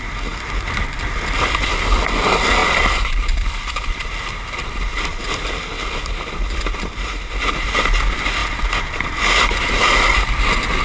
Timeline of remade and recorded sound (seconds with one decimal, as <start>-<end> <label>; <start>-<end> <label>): 0.0-2.6 recorded; 2.6-7.6 remade; 7.6-8.4 recorded; 8.4-10.3 remade; 10.3-10.8 recorded